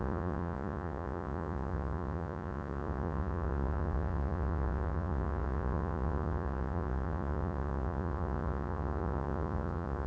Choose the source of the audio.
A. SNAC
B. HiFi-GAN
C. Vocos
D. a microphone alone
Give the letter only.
C